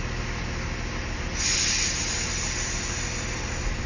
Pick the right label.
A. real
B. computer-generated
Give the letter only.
A